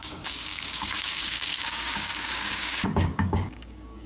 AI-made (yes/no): yes